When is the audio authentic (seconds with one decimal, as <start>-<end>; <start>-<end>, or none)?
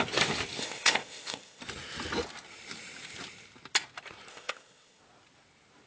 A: 0.0-0.6; 1.6-4.3; 5.0-5.9